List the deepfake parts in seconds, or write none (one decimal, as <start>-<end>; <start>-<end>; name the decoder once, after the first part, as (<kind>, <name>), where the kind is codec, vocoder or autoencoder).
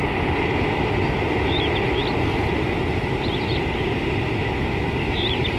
none